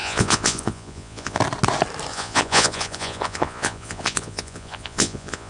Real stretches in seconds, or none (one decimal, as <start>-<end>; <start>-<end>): 1.4-2.1

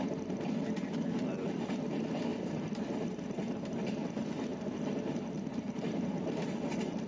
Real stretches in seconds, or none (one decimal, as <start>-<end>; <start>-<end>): 0.0-7.1

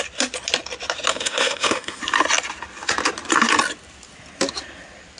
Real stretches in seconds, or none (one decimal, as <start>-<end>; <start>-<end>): 0.0-1.1; 2.0-5.2

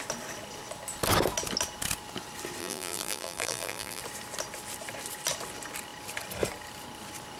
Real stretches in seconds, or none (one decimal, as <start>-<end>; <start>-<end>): 0.0-2.6; 4.0-7.4

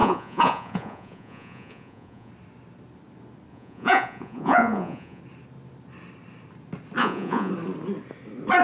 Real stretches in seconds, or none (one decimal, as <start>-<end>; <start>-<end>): 2.3-3.5; 5.2-7.0; 7.5-8.6

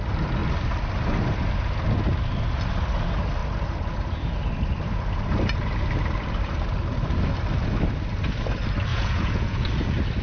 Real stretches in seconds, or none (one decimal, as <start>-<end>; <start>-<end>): 0.0-8.9; 9.7-10.2

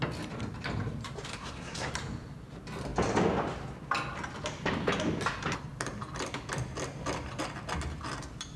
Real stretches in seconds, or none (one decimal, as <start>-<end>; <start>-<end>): 0.0-1.3; 1.9-8.6

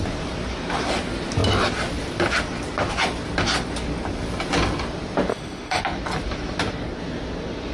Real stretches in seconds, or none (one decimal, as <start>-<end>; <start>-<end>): 0.0-5.3; 5.8-7.7